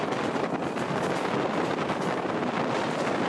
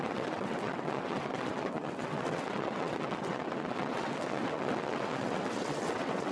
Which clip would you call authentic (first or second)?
first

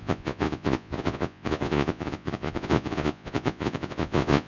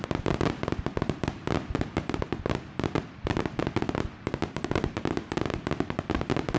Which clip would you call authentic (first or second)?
second